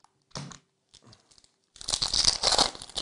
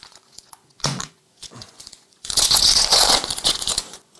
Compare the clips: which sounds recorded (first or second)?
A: first